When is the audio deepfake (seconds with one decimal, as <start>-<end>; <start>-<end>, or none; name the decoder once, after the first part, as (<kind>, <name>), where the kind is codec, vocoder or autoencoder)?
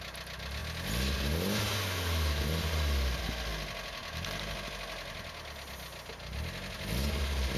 none